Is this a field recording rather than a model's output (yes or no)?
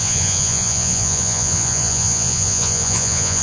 no